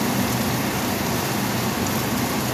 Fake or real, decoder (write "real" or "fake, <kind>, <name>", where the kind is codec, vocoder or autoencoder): real